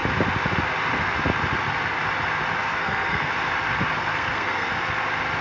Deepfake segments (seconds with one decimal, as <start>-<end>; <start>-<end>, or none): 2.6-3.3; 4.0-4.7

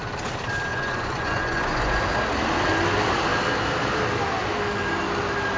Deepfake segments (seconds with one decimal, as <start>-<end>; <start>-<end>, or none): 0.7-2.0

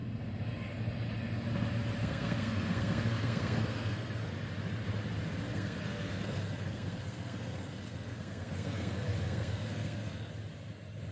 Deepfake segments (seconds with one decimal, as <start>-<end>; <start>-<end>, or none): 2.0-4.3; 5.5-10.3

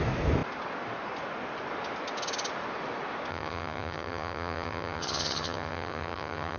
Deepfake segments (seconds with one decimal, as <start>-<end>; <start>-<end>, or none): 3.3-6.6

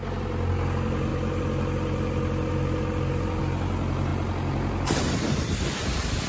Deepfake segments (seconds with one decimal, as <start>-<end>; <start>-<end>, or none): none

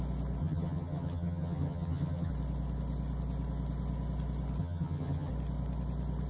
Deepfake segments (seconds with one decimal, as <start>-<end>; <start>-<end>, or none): 0.4-2.3; 4.6-5.3

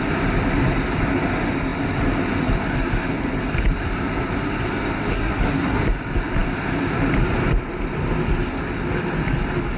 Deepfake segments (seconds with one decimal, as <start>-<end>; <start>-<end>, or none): 5.1-5.8

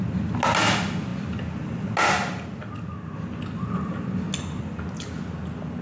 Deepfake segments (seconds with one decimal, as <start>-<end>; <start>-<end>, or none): none